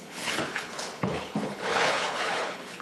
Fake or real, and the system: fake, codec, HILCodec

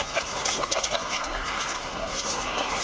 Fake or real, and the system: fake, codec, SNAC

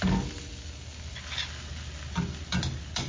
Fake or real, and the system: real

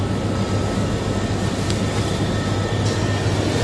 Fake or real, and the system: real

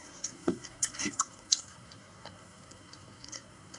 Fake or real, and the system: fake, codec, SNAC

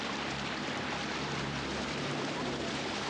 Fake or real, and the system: fake, vocoder, BigVGAN v2